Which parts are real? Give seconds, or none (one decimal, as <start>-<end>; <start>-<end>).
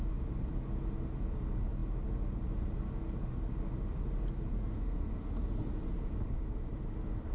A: 0.0-4.6; 5.3-7.3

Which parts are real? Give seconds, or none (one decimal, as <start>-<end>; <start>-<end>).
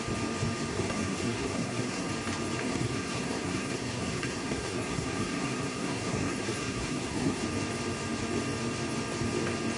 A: 0.0-0.7; 2.1-2.6; 7.4-9.8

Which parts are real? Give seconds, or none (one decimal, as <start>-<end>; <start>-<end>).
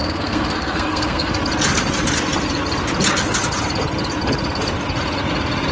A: 1.3-5.7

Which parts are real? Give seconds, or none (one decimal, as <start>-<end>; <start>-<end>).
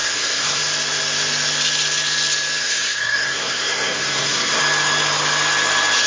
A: 0.6-2.6; 4.6-6.1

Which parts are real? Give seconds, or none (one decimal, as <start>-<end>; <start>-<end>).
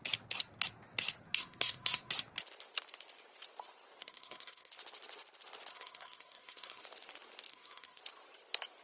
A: 0.0-1.3; 2.1-4.0; 4.7-5.7; 6.8-7.5; 8.0-8.8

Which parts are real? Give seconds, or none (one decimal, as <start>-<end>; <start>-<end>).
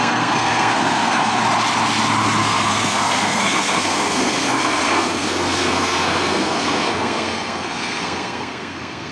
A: 1.4-2.4